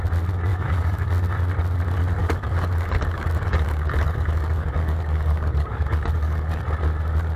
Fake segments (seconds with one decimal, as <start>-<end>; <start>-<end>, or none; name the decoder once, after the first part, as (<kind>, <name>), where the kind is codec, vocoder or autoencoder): 0.5-1.1 (codec, DAC); 2.2-6.6